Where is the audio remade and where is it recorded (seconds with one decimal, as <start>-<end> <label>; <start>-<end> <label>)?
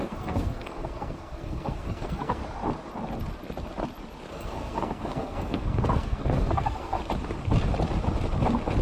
0.0-2.4 remade; 2.4-4.3 recorded; 4.3-7.0 remade; 7.0-8.8 recorded